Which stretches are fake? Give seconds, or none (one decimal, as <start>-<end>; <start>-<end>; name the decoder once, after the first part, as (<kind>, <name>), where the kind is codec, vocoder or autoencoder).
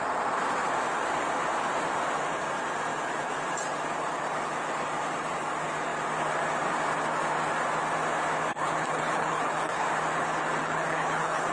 8.5-9.9 (codec, HILCodec); 10.6-11.5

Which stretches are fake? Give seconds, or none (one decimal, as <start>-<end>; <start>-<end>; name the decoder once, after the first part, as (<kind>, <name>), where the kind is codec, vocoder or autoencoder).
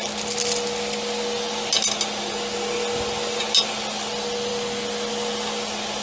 none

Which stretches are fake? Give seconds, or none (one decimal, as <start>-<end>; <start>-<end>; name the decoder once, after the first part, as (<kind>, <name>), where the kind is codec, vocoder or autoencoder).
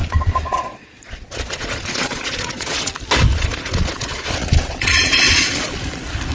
0.0-2.9 (vocoder, Vocos); 3.3-5.8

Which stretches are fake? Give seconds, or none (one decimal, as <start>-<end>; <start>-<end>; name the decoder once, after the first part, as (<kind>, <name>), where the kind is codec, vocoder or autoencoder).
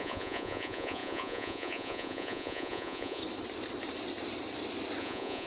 0.0-3.2 (vocoder, Vocos); 5.0-5.5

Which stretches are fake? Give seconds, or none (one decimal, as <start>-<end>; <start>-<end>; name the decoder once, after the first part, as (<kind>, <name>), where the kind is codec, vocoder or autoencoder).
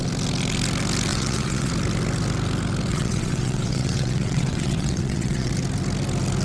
1.1-1.7 (vocoder, WaveNeXt); 2.9-5.5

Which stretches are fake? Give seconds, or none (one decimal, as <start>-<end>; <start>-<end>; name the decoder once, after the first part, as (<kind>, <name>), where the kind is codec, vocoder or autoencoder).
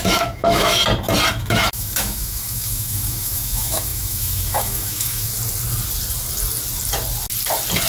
0.0-0.8 (autoencoder, DAC-VAE); 1.3-5.3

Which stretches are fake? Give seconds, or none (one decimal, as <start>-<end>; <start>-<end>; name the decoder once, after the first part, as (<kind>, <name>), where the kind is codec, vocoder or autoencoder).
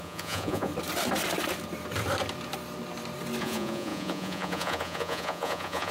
0.0-0.7 (vocoder, Vocos); 3.4-5.9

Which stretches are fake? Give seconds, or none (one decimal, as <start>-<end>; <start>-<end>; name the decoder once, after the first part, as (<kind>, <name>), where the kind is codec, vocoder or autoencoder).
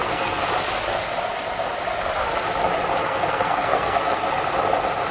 0.0-0.5 (codec, SNAC); 3.0-4.3